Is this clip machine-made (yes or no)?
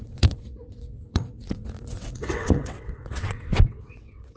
yes